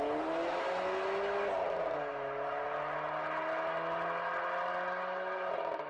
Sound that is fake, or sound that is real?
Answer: real